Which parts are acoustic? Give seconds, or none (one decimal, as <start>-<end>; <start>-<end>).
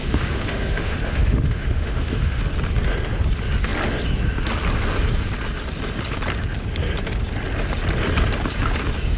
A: 2.4-9.2